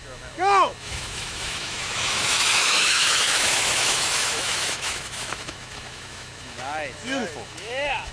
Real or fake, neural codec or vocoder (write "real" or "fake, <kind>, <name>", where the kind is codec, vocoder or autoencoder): fake, autoencoder, DAC-VAE